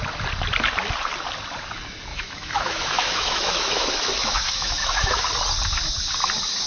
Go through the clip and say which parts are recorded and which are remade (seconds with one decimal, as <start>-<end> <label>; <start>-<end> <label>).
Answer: 0.0-2.1 recorded; 2.1-5.2 remade; 5.2-6.7 recorded